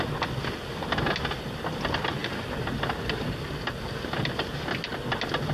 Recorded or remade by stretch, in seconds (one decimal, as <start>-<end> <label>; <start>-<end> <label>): 0.0-5.5 recorded